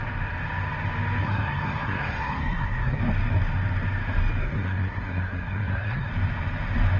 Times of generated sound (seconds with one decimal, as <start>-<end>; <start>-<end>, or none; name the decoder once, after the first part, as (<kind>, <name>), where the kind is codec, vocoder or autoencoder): 1.2-3.0 (codec, SNAC); 4.4-6.1